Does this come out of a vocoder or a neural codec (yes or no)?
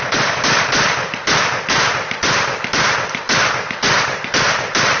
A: yes